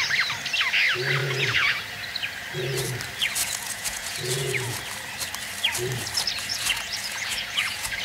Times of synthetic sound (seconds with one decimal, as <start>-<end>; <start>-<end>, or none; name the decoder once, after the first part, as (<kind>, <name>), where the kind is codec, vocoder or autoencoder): 1.2-1.8 (vocoder, Vocos); 3.4-4.8; 6.4-8.0